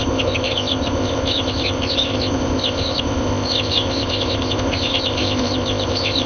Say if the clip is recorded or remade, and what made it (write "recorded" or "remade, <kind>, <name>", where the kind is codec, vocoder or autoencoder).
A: remade, codec, ZipCodec